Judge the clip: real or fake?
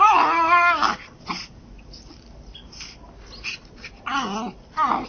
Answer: real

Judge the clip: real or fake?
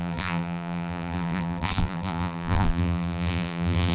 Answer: fake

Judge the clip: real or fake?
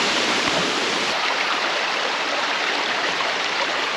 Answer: fake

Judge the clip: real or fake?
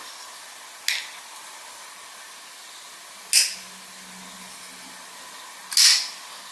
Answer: real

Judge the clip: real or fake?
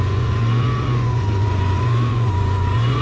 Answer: fake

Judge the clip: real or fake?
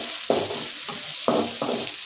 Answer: real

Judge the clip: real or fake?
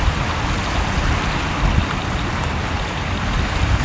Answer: real